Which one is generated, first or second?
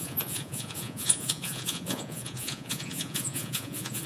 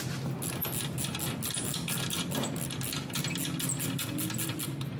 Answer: first